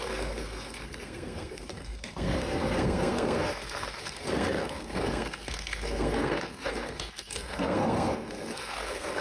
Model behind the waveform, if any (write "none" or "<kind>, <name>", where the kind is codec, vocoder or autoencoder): codec, SNAC